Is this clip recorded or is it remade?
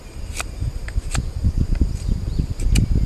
recorded